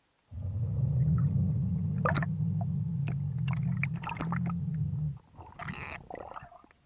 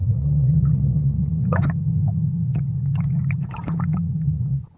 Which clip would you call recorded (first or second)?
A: first